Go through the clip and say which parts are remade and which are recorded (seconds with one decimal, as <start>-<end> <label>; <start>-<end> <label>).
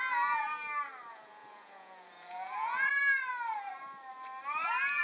0.0-1.1 recorded; 1.1-2.9 remade; 2.9-5.0 recorded